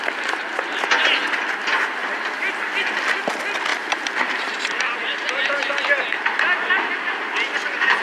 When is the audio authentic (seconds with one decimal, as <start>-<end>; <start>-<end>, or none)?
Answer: 0.0-3.7; 5.3-8.0